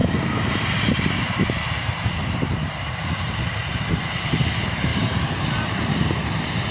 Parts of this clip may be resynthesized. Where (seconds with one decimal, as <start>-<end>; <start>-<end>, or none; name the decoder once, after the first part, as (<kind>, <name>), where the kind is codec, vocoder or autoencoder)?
0.0-4.0 (vocoder, BigVGAN v2); 4.9-6.7